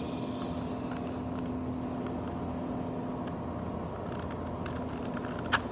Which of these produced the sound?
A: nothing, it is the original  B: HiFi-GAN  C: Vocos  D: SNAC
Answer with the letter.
A